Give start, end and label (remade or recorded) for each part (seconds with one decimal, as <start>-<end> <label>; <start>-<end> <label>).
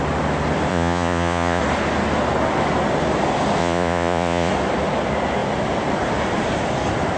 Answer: 0.0-0.7 recorded; 0.7-1.6 remade; 1.6-3.6 recorded; 3.6-4.5 remade; 4.5-7.2 recorded